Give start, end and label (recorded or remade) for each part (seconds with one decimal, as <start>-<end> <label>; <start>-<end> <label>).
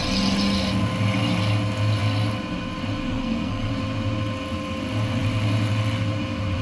0.0-3.1 recorded; 3.1-3.7 remade; 3.7-6.6 recorded